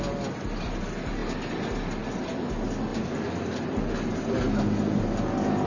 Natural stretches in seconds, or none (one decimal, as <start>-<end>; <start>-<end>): 0.0-5.7